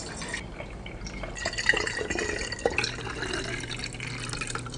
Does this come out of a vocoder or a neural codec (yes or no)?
no